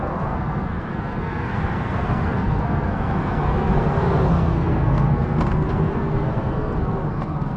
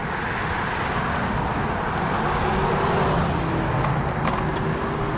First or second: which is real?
second